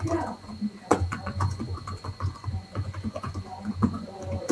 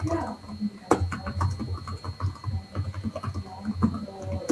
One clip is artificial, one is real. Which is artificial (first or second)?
first